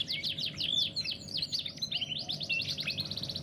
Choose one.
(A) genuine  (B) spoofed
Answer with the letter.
A